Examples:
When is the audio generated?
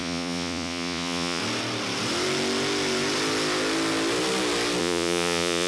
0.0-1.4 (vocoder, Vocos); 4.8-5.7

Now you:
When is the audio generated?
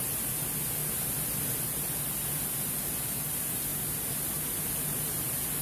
none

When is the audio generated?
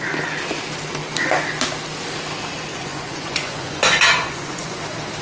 2.7-4.8 (vocoder, Vocos)